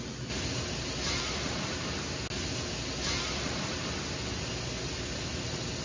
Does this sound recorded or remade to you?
recorded